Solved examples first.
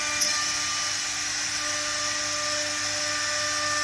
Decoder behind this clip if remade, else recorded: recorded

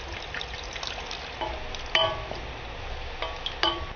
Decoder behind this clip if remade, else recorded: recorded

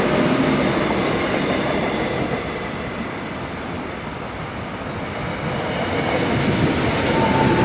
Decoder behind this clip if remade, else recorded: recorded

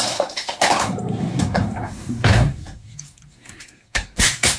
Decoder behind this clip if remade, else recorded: remade, codec, SNAC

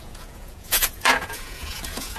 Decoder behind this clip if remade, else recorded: remade, vocoder, Vocos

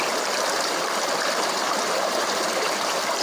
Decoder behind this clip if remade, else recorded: remade, vocoder, BigVGAN v2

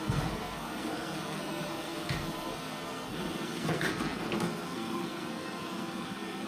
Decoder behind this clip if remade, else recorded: remade, codec, SNAC